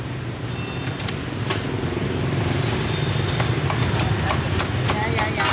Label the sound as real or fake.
real